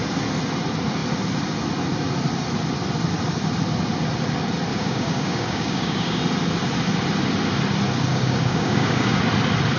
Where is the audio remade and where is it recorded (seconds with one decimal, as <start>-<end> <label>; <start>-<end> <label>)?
0.0-4.7 recorded; 4.7-6.2 remade; 6.2-8.1 recorded; 8.1-9.2 remade; 9.2-9.8 recorded